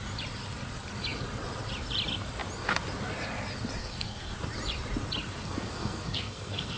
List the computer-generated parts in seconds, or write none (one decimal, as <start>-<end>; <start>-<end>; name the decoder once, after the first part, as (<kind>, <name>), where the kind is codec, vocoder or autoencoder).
3.8-4.3 (codec, SNAC); 5.4-6.8